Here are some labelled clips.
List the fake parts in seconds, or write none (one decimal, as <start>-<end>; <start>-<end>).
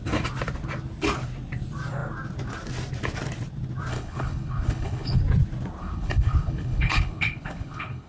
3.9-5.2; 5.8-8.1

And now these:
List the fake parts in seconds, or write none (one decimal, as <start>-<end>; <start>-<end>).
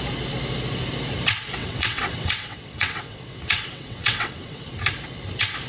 1.6-4.7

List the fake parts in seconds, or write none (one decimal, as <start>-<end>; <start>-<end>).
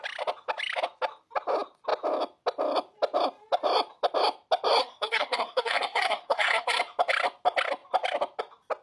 4.8-6.8